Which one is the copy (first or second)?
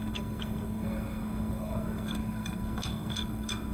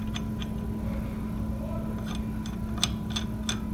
first